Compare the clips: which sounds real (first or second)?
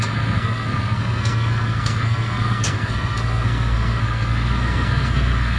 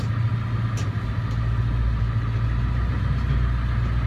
second